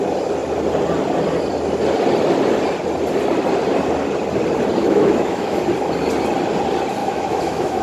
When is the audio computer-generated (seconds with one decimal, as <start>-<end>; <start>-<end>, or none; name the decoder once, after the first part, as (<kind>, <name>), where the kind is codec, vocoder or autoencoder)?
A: 4.8-5.6 (autoencoder, DAC-VAE); 7.0-7.8